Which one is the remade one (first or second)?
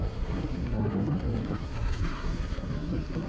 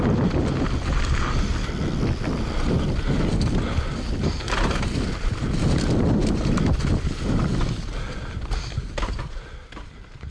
first